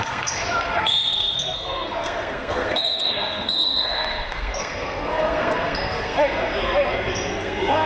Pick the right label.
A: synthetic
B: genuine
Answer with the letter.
A